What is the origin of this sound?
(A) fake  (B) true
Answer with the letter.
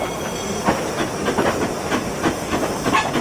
B